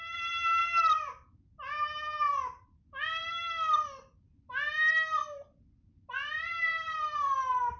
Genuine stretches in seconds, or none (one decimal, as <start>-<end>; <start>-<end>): 0.0-6.7; 7.3-7.8